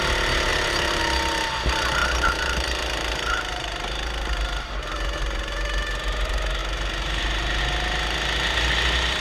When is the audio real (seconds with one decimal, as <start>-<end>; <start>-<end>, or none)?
0.0-0.5; 1.0-2.0; 4.7-6.6; 7.6-9.2